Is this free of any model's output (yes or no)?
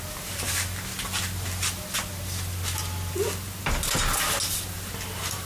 yes